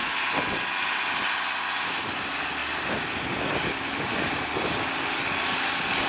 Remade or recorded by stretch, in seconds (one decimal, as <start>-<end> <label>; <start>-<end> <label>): 0.0-6.1 recorded